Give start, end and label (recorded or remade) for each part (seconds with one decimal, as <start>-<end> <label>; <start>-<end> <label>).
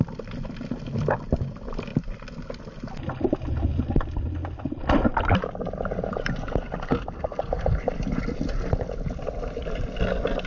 0.0-1.9 recorded; 1.9-2.5 remade; 2.5-10.5 recorded